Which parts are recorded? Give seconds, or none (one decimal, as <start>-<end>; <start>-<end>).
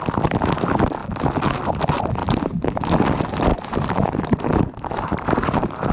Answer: 0.0-2.2; 2.9-3.5